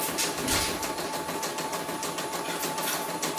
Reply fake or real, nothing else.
real